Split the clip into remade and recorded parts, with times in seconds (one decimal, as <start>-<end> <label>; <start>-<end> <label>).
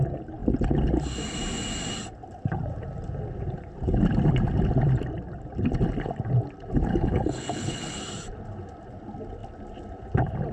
0.0-6.9 recorded; 6.9-8.0 remade; 8.0-10.5 recorded